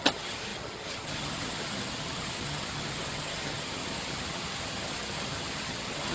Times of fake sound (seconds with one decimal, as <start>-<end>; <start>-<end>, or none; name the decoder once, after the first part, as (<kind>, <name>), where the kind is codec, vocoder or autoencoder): 0.0-6.1 (vocoder, HiFi-GAN)